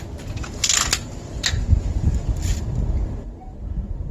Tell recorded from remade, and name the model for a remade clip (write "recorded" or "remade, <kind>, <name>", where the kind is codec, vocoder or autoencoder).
recorded